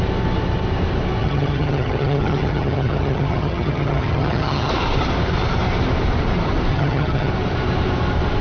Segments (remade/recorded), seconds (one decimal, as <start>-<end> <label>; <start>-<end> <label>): 0.0-1.2 recorded; 1.2-4.7 remade; 4.7-6.7 recorded; 6.7-7.3 remade; 7.3-8.4 recorded